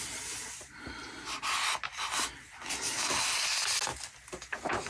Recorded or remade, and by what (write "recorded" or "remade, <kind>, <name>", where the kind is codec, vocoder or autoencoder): recorded